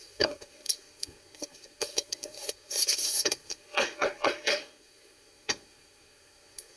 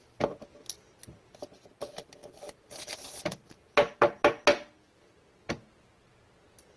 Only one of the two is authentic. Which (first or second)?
second